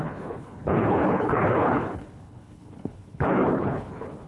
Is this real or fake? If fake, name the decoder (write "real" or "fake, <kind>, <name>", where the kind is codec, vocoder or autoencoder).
fake, codec, HILCodec